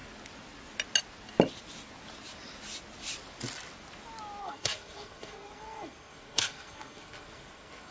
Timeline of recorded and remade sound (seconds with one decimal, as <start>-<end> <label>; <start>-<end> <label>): 0.0-4.4 recorded; 4.4-7.9 remade